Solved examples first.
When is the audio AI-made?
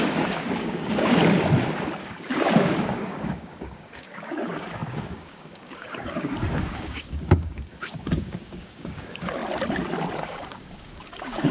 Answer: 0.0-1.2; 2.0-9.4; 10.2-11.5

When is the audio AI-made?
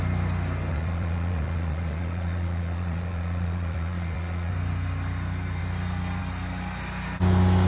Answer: 0.7-4.5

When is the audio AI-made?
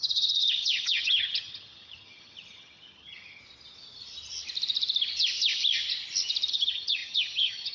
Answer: 0.0-3.4; 6.5-7.7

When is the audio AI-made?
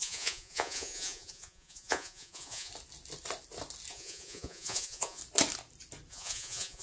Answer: 0.0-2.7; 3.9-5.2; 6.1-6.8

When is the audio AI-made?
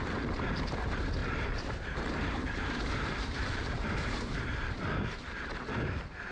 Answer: 1.2-5.0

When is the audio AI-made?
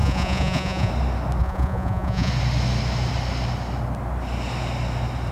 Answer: 0.0-0.9; 1.4-2.3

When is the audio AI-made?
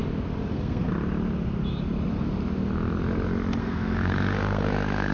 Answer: 0.5-0.9; 3.6-5.1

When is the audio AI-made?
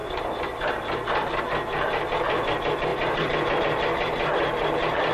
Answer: none